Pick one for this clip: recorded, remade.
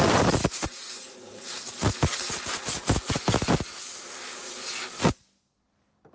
recorded